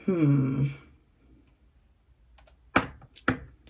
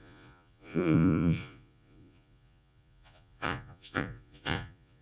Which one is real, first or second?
first